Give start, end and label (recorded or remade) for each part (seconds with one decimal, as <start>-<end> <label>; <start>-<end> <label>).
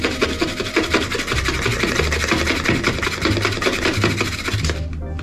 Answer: 0.0-5.2 recorded